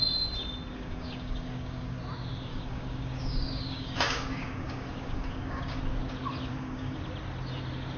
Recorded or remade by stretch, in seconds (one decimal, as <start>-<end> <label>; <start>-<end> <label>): 0.0-0.7 recorded; 0.7-2.0 remade; 2.0-2.5 recorded; 2.5-5.8 remade; 5.8-6.5 recorded; 6.5-7.0 remade; 7.0-8.0 recorded